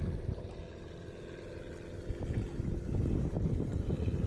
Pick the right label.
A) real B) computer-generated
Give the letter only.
A